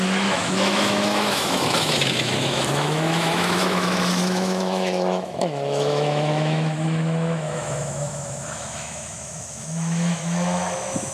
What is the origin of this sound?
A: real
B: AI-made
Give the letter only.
B